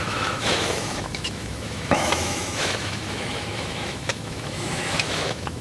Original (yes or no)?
no